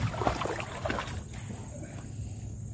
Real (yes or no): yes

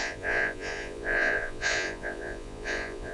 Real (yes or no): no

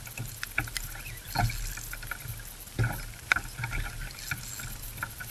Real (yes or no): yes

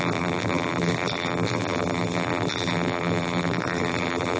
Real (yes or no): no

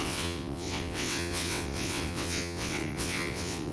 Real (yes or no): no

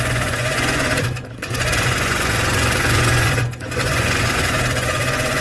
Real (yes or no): no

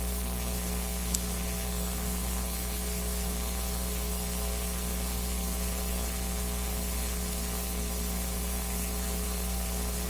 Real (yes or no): no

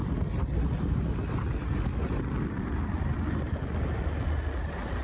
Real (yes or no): yes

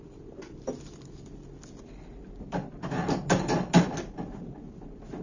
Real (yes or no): yes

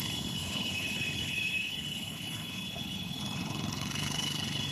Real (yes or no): no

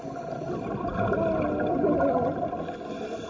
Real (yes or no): yes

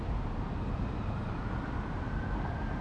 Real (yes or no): yes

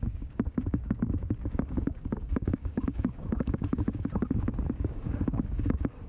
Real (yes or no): no